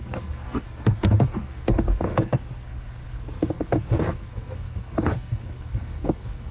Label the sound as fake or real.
fake